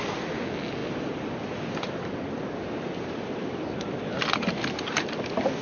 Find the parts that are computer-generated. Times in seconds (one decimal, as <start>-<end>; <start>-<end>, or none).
none